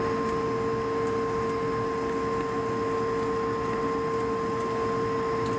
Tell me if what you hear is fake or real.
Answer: real